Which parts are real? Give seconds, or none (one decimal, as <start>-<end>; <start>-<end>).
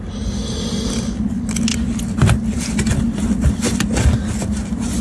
0.0-5.0